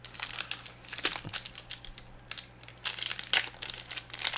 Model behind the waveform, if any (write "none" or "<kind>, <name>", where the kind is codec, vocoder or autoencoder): none